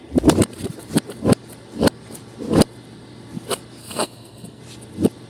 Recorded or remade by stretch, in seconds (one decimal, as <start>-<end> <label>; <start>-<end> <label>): 0.0-3.8 recorded; 3.8-4.6 remade; 4.6-5.3 recorded